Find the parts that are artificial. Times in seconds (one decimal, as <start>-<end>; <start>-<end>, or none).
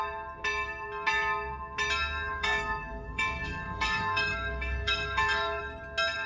2.3-5.6